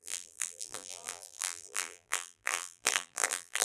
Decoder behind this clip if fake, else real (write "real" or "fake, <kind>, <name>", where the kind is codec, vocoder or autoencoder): fake, vocoder, BigVGAN v2